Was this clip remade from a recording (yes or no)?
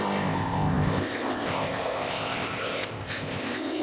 yes